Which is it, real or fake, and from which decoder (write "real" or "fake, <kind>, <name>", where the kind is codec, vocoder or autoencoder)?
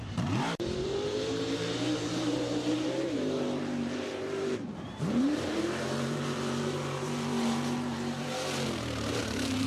fake, vocoder, BigVGAN v2